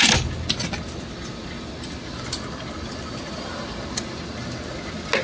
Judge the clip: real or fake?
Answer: real